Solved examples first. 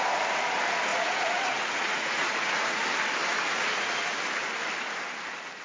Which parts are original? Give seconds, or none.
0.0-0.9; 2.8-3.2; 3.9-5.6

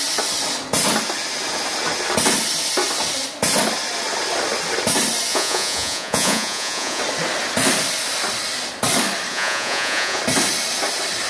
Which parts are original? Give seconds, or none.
0.0-5.3; 7.0-9.3; 10.2-11.3

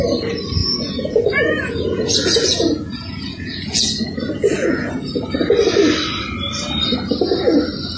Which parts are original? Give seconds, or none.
0.0-0.6; 4.9-8.0

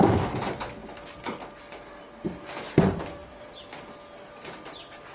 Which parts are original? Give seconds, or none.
0.0-5.1